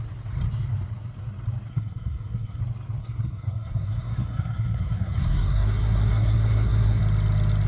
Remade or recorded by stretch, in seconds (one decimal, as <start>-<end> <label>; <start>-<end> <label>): 0.0-1.7 recorded; 1.7-2.6 remade; 2.6-3.0 recorded; 3.0-7.0 remade; 7.0-7.7 recorded